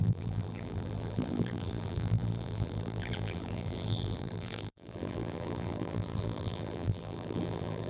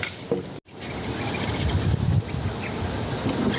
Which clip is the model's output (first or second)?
first